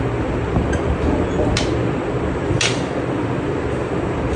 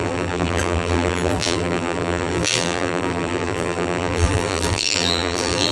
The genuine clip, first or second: first